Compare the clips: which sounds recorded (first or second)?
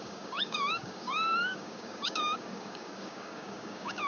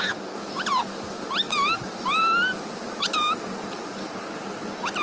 second